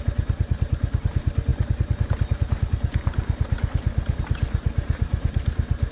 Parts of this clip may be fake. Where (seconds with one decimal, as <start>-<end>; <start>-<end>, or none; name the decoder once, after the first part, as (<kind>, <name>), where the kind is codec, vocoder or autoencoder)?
none